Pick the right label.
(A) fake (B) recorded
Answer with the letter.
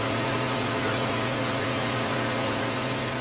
A